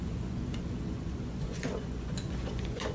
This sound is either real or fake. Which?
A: fake